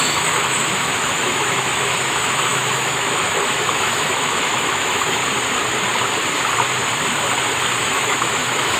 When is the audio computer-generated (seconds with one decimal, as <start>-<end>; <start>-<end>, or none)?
0.0-5.2; 7.8-8.8